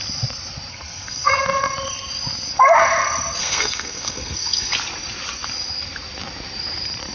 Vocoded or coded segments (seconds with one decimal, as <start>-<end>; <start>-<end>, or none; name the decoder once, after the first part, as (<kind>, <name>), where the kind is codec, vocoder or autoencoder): 0.7-1.3 (codec, SNAC); 3.4-4.7